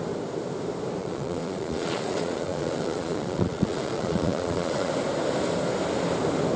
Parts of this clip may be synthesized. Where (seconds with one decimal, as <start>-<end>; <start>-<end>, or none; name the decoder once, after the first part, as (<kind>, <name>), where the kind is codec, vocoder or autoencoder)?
1.0-4.9 (vocoder, Vocos)